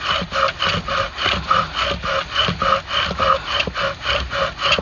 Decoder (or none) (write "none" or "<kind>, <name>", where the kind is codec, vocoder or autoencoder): none